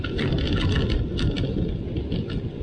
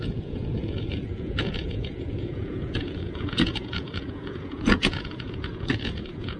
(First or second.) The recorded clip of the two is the first